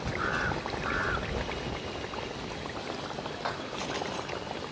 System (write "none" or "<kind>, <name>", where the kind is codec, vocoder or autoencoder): none